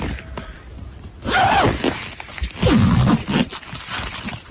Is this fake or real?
real